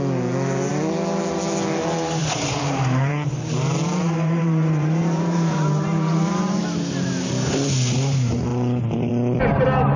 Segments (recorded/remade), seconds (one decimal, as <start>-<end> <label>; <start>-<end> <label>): 0.0-2.2 recorded; 2.2-6.6 remade; 6.6-10.0 recorded